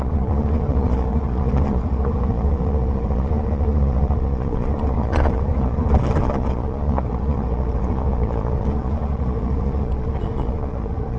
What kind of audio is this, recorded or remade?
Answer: remade